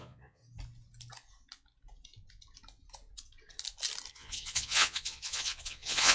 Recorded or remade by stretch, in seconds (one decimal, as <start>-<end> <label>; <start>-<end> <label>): 0.0-0.4 remade; 0.4-4.1 recorded; 4.1-6.1 remade